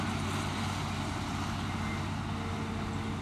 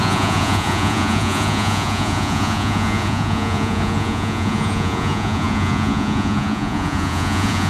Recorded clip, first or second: first